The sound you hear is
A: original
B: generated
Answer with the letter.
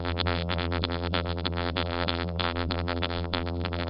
B